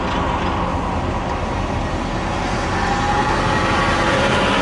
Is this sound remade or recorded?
recorded